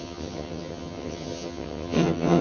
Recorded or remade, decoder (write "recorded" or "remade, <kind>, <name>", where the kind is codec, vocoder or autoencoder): remade, vocoder, HiFi-GAN